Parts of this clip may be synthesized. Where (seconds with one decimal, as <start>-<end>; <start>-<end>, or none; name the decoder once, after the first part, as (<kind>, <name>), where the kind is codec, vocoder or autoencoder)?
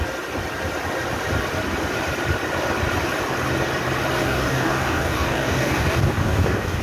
4.2-6.8 (codec, DAC)